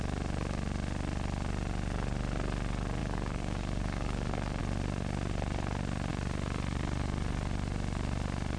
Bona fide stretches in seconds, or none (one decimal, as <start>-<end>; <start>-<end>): 0.0-3.0; 4.6-8.6